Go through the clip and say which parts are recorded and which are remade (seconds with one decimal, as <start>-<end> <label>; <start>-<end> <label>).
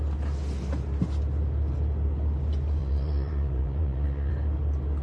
0.0-2.8 recorded; 2.8-4.3 remade; 4.3-5.0 recorded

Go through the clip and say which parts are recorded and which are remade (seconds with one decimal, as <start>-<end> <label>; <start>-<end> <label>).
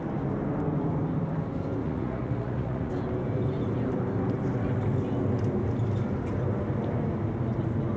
0.0-1.8 recorded; 1.8-2.9 remade; 2.9-8.0 recorded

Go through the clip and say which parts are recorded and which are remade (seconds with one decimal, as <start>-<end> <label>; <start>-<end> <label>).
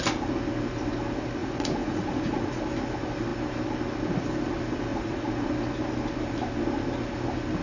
0.0-1.4 recorded; 1.4-2.6 remade; 2.6-4.9 recorded; 4.9-5.5 remade; 5.5-7.6 recorded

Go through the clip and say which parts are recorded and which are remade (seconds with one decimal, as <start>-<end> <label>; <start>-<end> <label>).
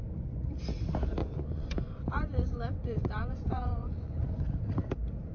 0.0-1.2 recorded; 1.2-4.4 remade; 4.4-5.3 recorded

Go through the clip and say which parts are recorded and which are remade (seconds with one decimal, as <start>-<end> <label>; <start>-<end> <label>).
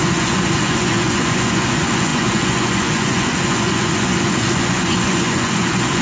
0.0-6.0 remade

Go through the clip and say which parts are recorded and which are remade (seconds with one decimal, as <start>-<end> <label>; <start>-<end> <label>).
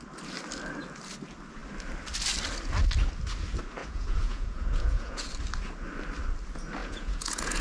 0.0-3.8 recorded; 3.8-5.3 remade; 5.3-6.8 recorded; 6.8-7.6 remade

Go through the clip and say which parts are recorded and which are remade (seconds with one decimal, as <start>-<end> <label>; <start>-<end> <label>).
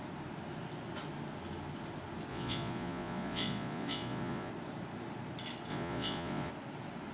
0.0-2.3 recorded; 2.3-4.5 remade; 4.5-5.7 recorded; 5.7-6.5 remade; 6.5-7.1 recorded